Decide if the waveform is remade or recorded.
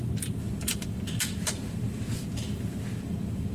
remade